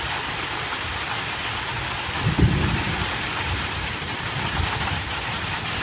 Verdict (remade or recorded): recorded